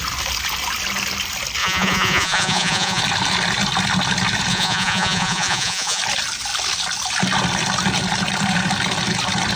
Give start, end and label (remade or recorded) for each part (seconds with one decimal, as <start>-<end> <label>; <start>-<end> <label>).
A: 0.0-1.6 recorded; 1.6-3.0 remade; 3.0-4.5 recorded; 4.5-6.0 remade; 6.0-9.6 recorded